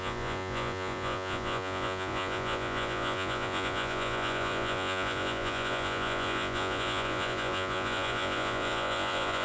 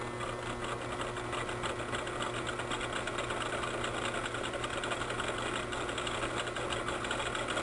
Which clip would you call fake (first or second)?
first